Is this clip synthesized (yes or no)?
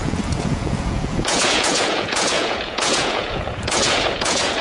yes